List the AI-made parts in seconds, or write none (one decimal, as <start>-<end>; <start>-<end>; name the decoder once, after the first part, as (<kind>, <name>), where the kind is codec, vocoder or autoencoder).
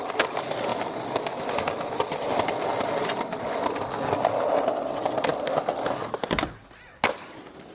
none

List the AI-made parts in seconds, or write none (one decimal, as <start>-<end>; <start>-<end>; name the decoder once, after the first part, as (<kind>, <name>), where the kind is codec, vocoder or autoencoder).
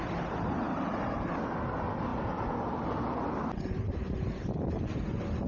2.1-4.9 (vocoder, BigVGAN v2)